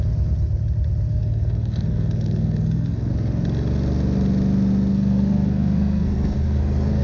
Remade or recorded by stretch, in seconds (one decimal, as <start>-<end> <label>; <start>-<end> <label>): 0.0-1.1 recorded; 1.1-3.1 remade; 3.1-4.9 recorded; 4.9-7.0 remade